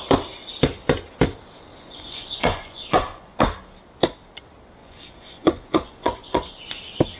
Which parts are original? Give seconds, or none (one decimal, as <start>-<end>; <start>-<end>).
0.0-1.7; 3.4-4.8; 6.8-7.2